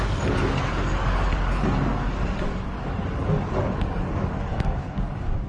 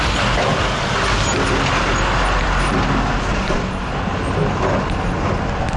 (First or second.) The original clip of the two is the second